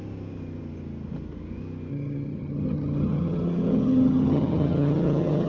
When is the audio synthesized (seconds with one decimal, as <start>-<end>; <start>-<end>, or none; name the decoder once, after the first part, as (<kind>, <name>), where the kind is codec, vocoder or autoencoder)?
1.9-5.5 (vocoder, HiFi-GAN)

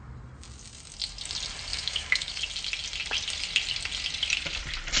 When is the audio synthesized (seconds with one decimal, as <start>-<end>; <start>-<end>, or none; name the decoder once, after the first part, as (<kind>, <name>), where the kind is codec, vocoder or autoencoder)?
1.7-2.4 (autoencoder, DAC-VAE)

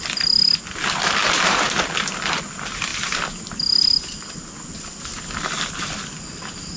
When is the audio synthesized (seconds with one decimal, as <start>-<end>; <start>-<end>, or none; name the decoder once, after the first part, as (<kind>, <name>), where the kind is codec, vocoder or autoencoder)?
0.0-2.9 (vocoder, BigVGAN v2); 5.7-6.8

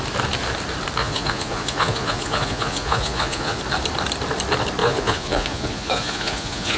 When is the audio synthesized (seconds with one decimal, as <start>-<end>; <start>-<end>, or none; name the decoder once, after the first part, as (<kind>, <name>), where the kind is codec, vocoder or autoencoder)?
1.0-3.6 (vocoder, Vocos); 4.8-6.8

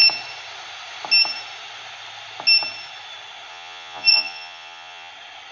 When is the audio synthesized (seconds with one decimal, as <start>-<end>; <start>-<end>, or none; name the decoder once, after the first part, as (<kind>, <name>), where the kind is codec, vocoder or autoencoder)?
3.5-5.1 (vocoder, Vocos)

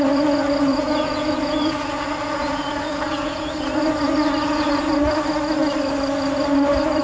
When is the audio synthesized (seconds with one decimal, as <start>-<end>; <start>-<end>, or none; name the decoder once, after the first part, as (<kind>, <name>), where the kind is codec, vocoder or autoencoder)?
0.7-3.5 (vocoder, Vocos); 4.4-4.9

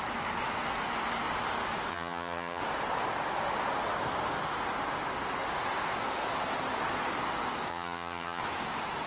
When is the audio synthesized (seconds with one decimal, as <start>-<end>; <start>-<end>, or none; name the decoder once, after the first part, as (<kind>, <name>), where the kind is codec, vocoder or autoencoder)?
1.9-2.6 (vocoder, HiFi-GAN); 7.7-8.4